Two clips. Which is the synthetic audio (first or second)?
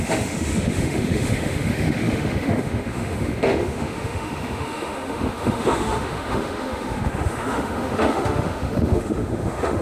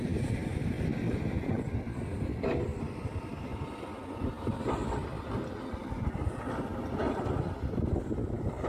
first